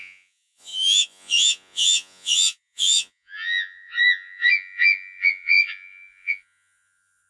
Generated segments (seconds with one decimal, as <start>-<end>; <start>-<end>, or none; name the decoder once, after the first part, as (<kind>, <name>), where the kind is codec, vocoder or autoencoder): 0.0-7.3 (vocoder, Vocos)